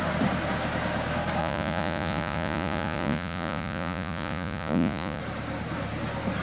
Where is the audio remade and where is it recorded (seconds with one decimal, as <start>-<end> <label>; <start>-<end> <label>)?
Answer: 0.0-1.4 recorded; 1.4-5.2 remade; 5.2-6.4 recorded